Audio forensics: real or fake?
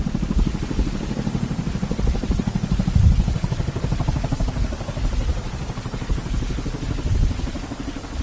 real